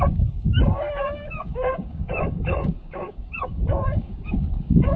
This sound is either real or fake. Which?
fake